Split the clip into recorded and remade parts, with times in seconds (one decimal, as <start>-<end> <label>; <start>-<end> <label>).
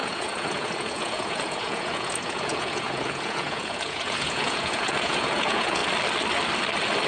0.0-5.8 remade; 5.8-7.1 recorded